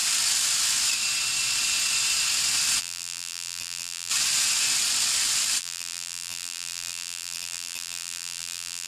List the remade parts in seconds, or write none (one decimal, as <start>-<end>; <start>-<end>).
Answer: 2.8-4.1; 5.6-8.9